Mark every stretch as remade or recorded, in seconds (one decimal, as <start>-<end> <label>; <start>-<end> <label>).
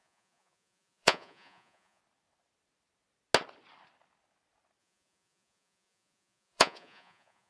0.0-2.0 remade; 2.0-4.8 recorded; 4.8-7.5 remade